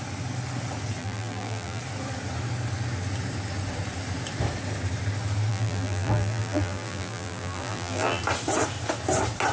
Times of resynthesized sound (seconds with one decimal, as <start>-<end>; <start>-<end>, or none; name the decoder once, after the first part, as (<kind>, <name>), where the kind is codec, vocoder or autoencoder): 1.0-1.8 (vocoder, BigVGAN v2); 5.5-8.2